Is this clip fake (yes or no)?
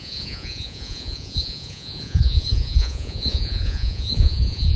yes